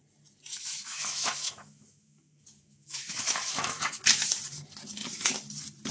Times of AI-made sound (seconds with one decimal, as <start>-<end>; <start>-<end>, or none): 0.5-4.0